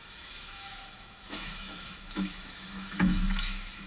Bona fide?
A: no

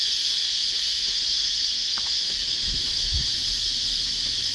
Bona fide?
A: no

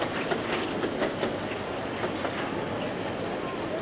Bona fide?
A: yes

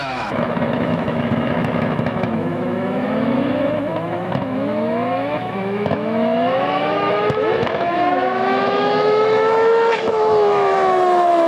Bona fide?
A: no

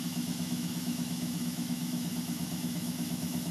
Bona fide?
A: no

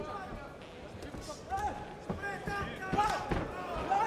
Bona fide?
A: yes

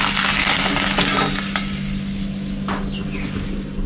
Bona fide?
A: yes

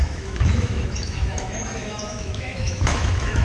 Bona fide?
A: no